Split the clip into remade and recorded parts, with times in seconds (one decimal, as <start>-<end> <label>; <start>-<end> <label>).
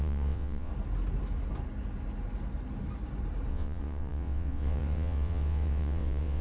0.0-0.7 remade; 0.7-3.5 recorded; 3.5-6.4 remade